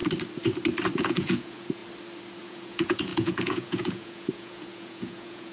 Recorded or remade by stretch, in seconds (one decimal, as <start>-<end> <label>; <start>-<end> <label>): 0.0-1.0 recorded; 1.0-1.8 remade; 1.8-2.4 recorded; 2.4-5.5 remade